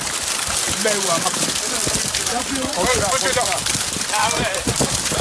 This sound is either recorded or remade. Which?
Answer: recorded